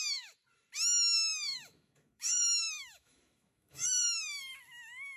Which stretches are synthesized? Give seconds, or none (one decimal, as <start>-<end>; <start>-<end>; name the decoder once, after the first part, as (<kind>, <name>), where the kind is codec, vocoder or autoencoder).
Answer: 1.3-4.4 (autoencoder, DAC-VAE)